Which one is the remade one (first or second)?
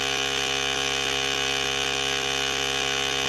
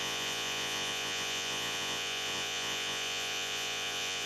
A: second